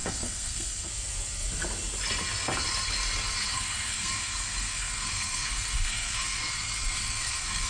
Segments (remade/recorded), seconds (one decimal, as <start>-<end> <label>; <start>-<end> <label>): 0.0-0.9 remade; 0.9-3.4 recorded; 3.4-7.7 remade